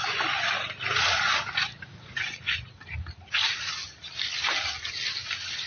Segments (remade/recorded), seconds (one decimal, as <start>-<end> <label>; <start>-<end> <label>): 0.0-1.2 recorded; 1.2-3.7 remade; 3.7-5.7 recorded